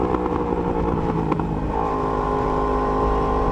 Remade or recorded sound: remade